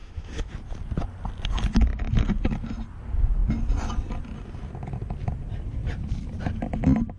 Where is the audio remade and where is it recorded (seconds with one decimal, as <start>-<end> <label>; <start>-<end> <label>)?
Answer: 0.0-0.5 remade; 0.5-7.2 recorded